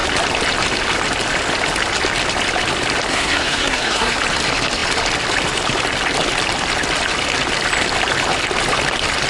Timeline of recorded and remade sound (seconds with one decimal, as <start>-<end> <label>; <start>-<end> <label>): 0.0-3.1 recorded; 3.1-4.2 remade; 4.2-9.3 recorded